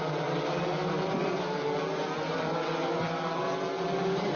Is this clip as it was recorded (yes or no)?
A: yes